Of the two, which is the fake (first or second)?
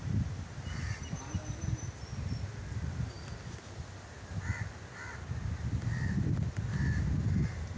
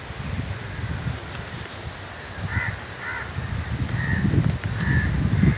second